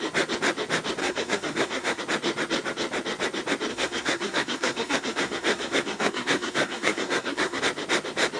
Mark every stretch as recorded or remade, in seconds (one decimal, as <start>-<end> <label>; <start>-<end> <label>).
0.0-1.0 recorded; 1.0-2.0 remade; 2.0-3.7 recorded; 3.7-7.6 remade; 7.6-8.4 recorded